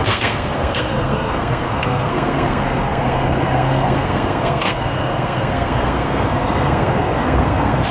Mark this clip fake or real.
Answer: fake